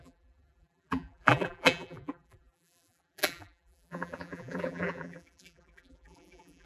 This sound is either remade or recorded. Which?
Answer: remade